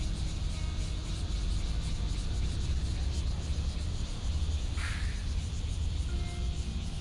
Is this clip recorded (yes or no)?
yes